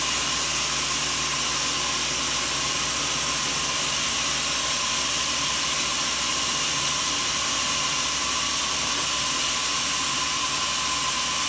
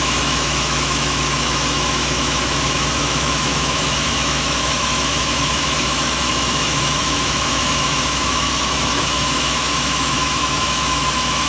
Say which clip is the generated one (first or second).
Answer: second